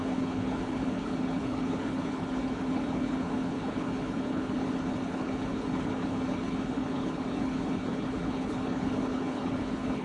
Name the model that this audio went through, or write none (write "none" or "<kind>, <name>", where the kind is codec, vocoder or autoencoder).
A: codec, HILCodec